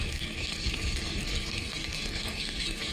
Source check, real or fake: fake